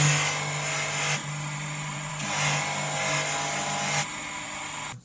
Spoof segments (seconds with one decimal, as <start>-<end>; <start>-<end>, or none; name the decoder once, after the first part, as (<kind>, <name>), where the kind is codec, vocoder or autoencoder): 1.2-2.1 (vocoder, BigVGAN v2)